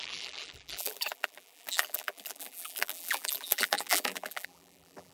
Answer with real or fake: fake